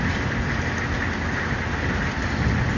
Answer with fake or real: real